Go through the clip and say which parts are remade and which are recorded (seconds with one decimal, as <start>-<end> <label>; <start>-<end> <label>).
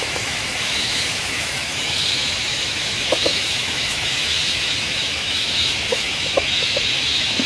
0.0-7.5 remade